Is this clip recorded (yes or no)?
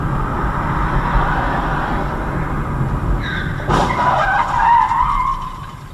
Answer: yes